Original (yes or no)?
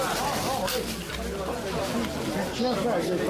yes